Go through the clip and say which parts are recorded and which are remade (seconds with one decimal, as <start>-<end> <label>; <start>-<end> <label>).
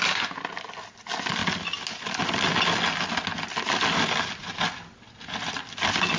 0.0-6.2 recorded